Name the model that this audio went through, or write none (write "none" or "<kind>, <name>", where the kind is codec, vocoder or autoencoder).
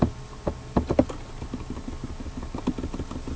none